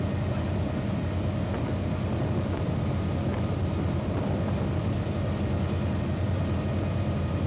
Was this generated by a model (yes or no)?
no